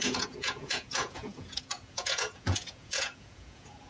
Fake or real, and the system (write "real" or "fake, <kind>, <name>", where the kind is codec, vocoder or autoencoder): fake, vocoder, Vocos